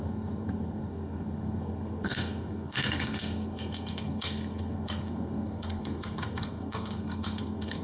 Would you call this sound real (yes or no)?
no